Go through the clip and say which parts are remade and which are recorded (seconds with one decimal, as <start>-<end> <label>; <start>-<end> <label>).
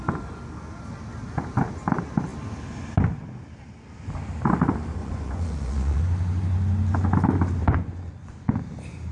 0.0-5.0 recorded; 5.0-6.0 remade; 6.0-7.6 recorded; 7.6-8.6 remade; 8.6-9.1 recorded